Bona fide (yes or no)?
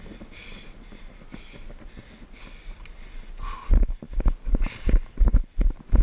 yes